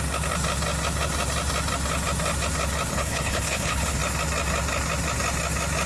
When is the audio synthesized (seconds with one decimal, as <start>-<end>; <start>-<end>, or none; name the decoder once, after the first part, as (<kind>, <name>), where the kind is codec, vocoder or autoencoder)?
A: 2.9-4.0 (codec, HILCodec)